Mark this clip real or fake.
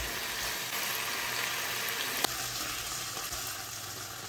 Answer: real